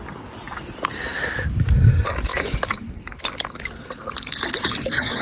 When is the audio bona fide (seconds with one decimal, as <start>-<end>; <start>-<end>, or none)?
0.0-5.2